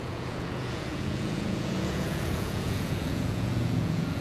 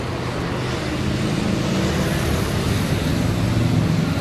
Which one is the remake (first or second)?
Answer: first